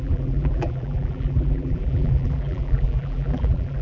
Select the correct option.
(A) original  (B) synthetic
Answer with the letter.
B